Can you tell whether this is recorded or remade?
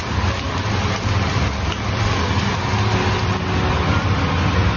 recorded